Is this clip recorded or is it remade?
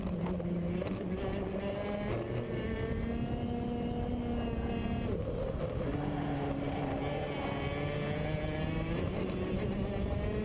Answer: recorded